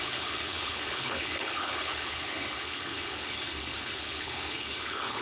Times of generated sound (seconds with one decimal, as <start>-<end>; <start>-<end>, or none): 0.0-5.2